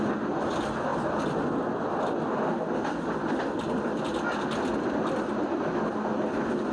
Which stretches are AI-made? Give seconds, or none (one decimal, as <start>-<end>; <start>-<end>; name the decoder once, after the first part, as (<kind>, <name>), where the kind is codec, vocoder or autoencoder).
none